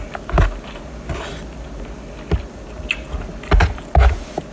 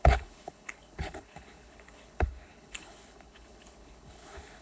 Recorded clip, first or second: first